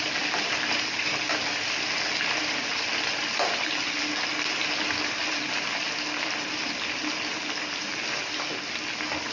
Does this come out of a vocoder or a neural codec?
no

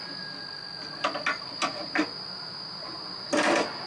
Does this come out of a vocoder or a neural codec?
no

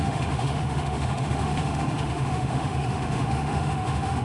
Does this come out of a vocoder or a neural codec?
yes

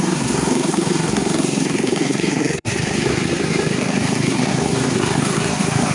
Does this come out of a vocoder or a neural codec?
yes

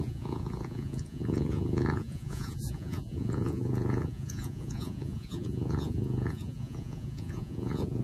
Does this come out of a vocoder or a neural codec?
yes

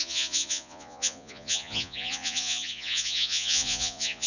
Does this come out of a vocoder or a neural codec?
yes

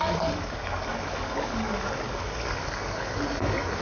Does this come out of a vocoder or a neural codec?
yes